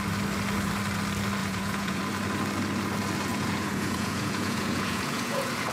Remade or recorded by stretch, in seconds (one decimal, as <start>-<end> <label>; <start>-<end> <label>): 0.0-1.4 recorded; 1.4-2.0 remade; 2.0-3.3 recorded; 3.3-5.7 remade